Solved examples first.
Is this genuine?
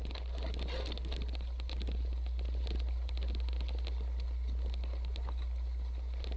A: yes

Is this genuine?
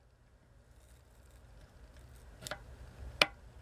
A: yes